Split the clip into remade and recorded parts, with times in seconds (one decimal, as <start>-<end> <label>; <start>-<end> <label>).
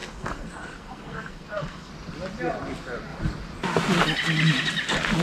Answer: 0.0-1.9 remade; 1.9-5.2 recorded